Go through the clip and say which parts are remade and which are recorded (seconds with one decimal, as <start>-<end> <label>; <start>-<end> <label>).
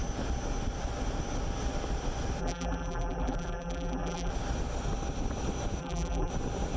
0.0-2.4 recorded; 2.4-4.3 remade; 4.3-5.8 recorded; 5.8-6.3 remade; 6.3-6.8 recorded